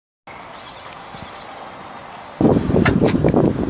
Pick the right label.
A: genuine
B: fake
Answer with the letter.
A